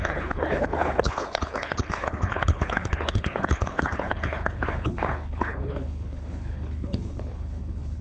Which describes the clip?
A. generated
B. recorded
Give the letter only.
A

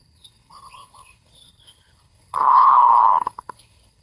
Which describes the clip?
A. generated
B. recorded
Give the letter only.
A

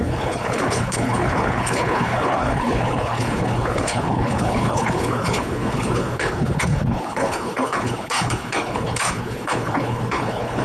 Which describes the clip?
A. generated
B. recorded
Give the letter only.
A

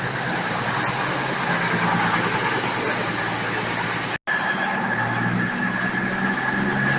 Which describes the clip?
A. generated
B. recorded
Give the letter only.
B